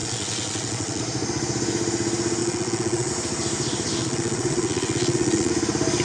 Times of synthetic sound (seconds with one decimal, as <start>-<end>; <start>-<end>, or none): 0.0-1.0; 2.4-3.1; 4.0-5.5